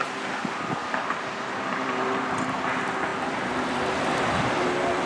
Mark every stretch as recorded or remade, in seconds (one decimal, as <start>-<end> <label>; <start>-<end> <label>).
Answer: 0.0-0.4 recorded; 0.4-2.3 remade; 2.3-3.1 recorded; 3.1-3.8 remade; 3.8-5.1 recorded